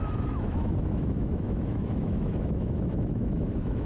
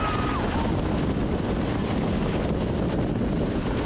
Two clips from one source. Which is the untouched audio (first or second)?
second